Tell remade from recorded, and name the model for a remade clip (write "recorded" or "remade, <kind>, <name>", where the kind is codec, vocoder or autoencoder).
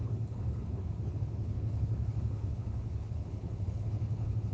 remade, codec, HILCodec